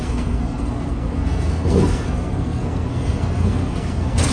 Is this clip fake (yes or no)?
yes